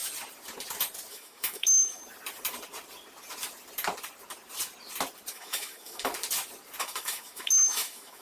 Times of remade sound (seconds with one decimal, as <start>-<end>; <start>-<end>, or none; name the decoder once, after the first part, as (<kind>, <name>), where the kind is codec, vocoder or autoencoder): 1.1-2.0 (autoencoder, DAC-VAE); 5.3-6.1; 6.8-8.2